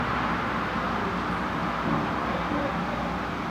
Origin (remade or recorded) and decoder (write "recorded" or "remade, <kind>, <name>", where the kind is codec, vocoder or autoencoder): recorded